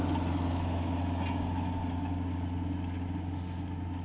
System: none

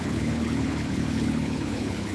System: codec, HILCodec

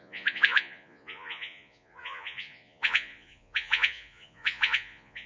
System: vocoder, Vocos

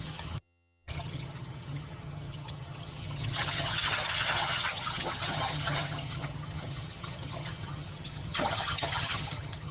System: vocoder, HiFi-GAN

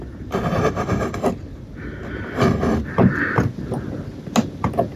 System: none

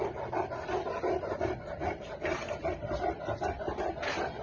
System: vocoder, BigVGAN v2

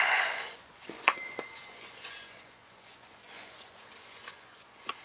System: vocoder, Vocos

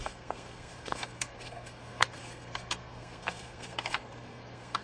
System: codec, SNAC